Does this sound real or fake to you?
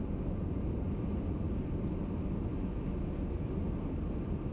real